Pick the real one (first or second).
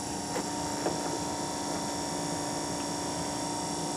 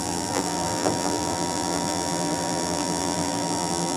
first